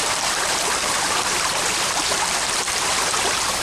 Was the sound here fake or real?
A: fake